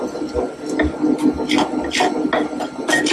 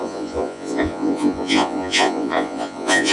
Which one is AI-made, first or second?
second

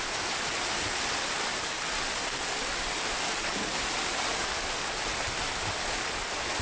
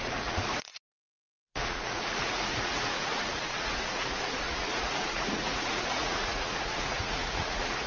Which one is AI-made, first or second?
second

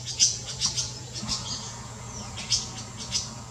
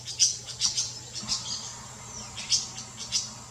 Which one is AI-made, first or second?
first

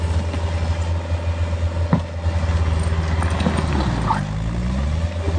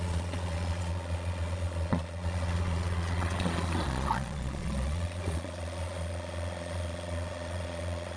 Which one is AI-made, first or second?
second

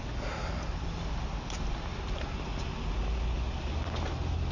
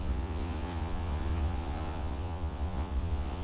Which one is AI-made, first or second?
second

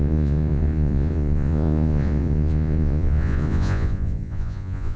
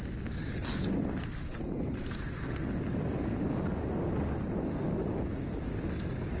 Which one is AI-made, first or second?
first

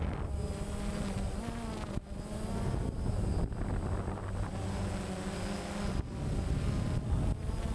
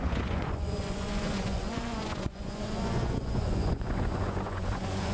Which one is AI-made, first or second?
second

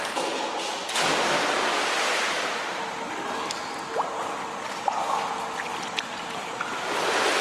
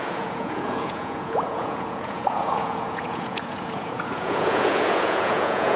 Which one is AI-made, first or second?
second